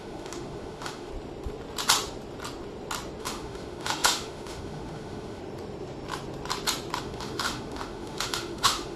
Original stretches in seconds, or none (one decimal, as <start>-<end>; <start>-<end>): 1.1-3.2; 5.4-7.0